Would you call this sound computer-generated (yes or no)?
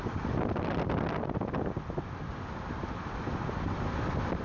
no